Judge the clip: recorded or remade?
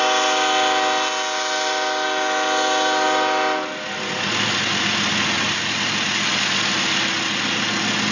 recorded